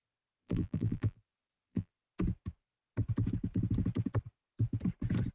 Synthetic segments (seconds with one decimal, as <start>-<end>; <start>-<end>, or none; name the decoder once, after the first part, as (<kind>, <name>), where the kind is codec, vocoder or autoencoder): 0.4-1.9 (vocoder, BigVGAN v2)